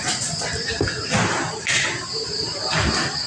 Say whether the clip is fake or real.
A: real